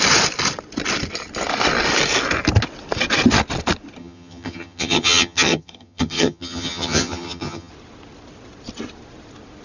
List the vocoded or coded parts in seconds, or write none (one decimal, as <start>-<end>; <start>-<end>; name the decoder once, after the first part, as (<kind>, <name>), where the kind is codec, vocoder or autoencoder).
4.0-7.7 (vocoder, HiFi-GAN)